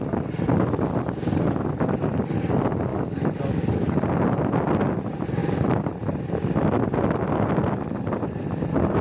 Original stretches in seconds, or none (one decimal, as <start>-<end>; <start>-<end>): 0.0-2.9; 3.9-9.0